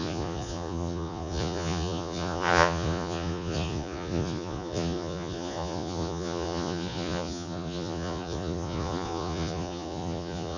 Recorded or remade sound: remade